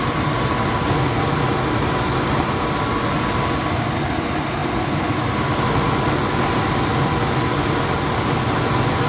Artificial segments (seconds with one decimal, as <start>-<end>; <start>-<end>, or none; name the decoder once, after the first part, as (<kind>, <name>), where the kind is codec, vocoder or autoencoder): none